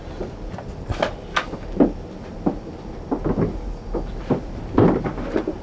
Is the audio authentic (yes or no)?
yes